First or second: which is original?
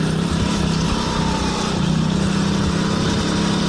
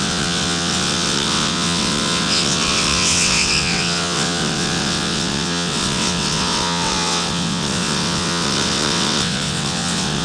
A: first